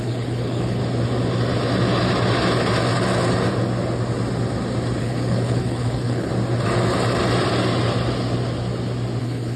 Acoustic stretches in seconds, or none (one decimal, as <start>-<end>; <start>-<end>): 0.8-5.0; 6.3-9.2